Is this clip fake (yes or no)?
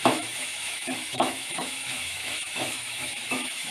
yes